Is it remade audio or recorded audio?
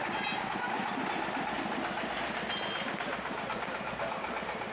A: recorded